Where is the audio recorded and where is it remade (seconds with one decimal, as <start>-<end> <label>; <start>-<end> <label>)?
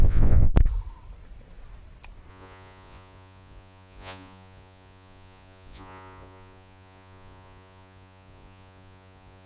0.0-0.5 remade; 0.5-2.3 recorded; 2.3-9.5 remade